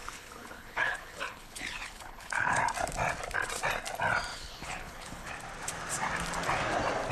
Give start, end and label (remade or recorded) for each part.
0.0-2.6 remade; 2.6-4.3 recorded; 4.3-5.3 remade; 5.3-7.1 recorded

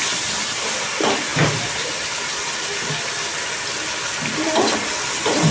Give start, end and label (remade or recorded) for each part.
0.0-5.5 recorded

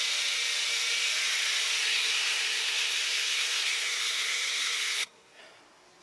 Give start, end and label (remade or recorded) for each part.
0.0-1.8 recorded; 1.8-5.4 remade; 5.4-6.0 recorded

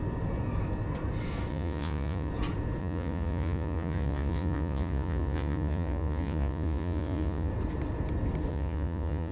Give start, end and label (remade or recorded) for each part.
0.0-1.5 recorded; 1.5-2.3 remade; 2.3-2.8 recorded; 2.8-7.5 remade; 7.5-8.5 recorded; 8.5-9.3 remade

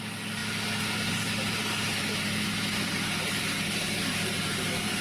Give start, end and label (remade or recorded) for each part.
0.0-5.0 recorded

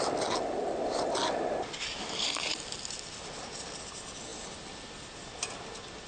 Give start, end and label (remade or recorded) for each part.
0.0-6.1 recorded

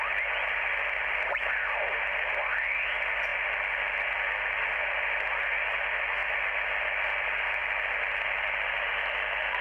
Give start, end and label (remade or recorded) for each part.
0.0-9.6 recorded

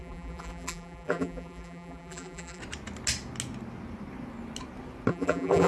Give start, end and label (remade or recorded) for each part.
0.0-2.6 remade; 2.6-5.1 recorded; 5.1-5.7 remade